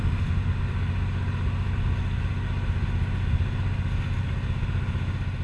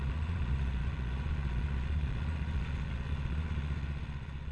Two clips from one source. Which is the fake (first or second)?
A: second